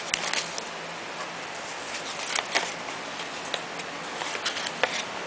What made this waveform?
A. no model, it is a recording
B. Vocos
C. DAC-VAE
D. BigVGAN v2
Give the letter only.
A